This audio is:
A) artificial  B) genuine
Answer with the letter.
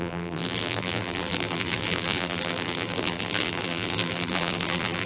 A